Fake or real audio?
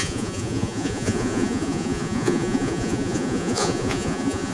fake